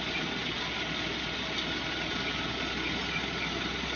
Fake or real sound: real